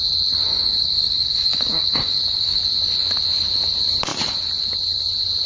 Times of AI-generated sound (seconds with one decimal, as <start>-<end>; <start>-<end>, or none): 0.5-2.6

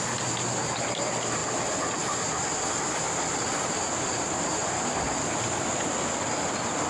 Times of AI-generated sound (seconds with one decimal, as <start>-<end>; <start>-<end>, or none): none

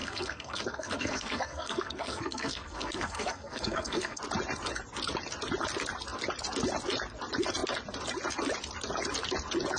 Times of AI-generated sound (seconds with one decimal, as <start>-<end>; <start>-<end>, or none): 0.0-4.2

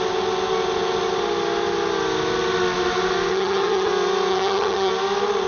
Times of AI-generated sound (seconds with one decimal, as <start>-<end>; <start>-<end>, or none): 3.3-3.9; 4.3-4.9

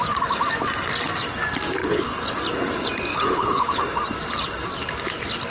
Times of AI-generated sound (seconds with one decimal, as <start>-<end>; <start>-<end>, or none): 1.8-2.3; 3.1-3.8

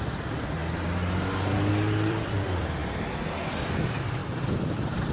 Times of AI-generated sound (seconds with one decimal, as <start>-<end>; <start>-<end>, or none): 0.0-0.6; 1.7-2.8; 3.6-5.1